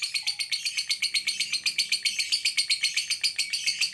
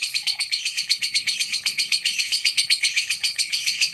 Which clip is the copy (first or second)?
second